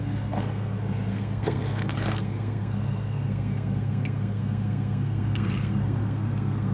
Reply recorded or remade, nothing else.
remade